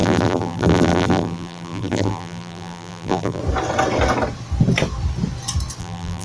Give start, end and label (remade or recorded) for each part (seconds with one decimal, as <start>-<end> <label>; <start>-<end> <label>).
0.0-3.4 remade; 3.4-5.8 recorded; 5.8-6.2 remade